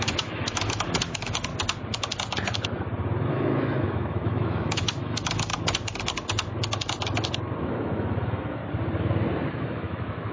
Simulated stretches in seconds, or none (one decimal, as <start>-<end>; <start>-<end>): 0.0-1.5; 3.3-5.5; 7.6-8.6; 9.5-10.3